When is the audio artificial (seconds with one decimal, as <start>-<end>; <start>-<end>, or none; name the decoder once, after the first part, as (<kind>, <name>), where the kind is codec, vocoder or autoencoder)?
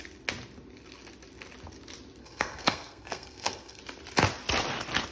2.2-3.8 (codec, SNAC)